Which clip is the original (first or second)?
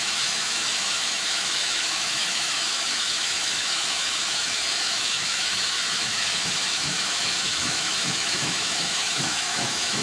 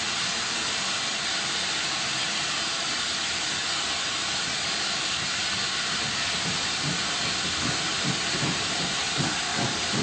second